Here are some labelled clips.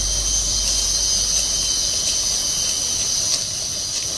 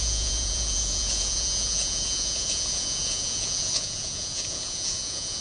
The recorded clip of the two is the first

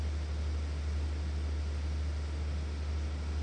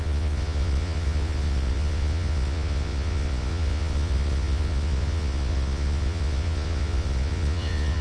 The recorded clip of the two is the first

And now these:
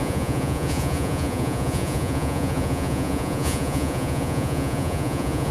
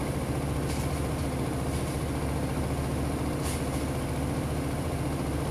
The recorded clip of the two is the second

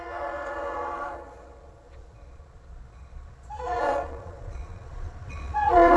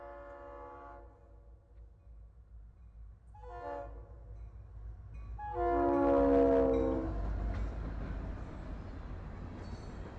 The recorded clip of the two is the second